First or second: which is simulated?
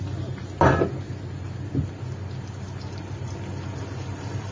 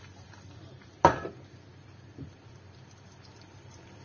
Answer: second